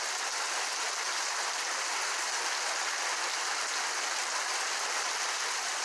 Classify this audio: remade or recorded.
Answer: recorded